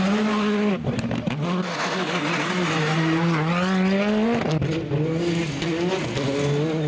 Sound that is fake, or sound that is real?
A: real